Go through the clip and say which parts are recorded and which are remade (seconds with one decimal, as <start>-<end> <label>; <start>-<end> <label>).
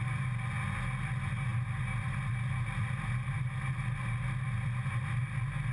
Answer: 0.0-5.7 recorded